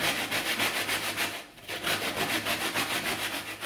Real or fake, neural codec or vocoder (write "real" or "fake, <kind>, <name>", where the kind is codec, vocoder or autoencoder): real